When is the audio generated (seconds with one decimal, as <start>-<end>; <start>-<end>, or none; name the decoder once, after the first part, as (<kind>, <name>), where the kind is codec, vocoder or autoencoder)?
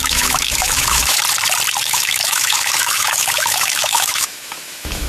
0.0-1.2 (autoencoder, DAC-VAE); 1.8-5.1